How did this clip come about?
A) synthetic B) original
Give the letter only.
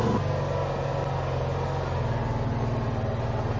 B